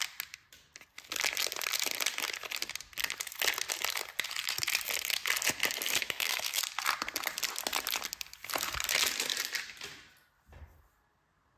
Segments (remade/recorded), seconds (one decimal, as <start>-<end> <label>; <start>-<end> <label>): 0.0-5.9 recorded; 5.9-6.6 remade; 6.6-11.6 recorded